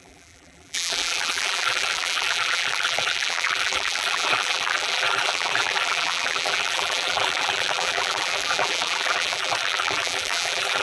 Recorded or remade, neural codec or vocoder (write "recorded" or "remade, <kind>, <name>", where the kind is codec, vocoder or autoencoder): remade, vocoder, BigVGAN v2